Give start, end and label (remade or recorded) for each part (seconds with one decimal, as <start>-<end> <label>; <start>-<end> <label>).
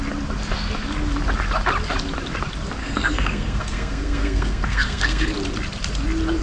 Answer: 0.0-2.8 recorded; 2.8-5.3 remade; 5.3-6.4 recorded